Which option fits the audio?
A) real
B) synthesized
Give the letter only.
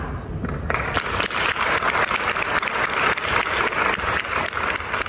A